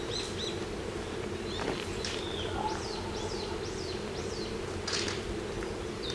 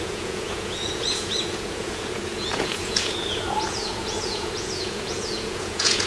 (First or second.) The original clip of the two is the first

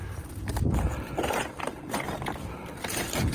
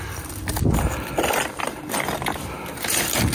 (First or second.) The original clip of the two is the second